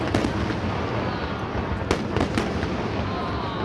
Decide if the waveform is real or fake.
real